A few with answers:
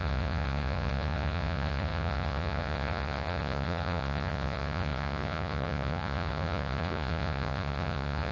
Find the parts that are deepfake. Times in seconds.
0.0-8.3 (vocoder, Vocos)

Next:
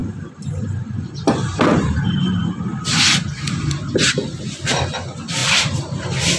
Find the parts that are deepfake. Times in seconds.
0.0-3.0 (vocoder, BigVGAN v2); 5.4-6.4

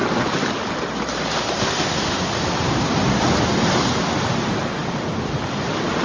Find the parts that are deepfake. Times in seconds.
none

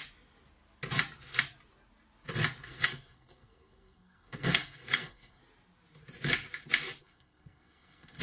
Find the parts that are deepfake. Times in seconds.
2.6-5.4 (codec, SNAC); 7.0-8.2

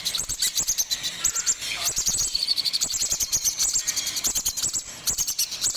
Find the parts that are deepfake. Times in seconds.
none